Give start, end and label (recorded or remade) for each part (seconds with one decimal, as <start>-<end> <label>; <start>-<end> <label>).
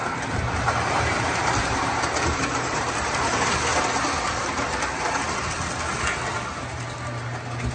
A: 0.0-3.7 remade; 3.7-7.7 recorded